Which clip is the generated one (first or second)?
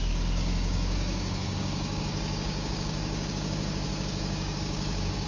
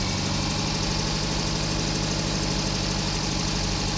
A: first